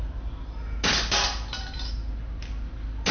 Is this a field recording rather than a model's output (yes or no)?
yes